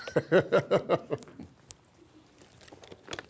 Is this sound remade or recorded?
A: recorded